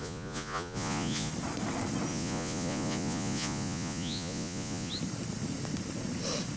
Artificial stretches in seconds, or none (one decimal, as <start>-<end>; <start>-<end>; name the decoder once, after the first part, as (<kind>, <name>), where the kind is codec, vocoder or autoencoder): 0.0-1.3 (vocoder, Vocos); 2.1-4.9